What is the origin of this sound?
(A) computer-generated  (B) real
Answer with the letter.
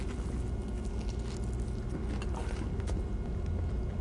B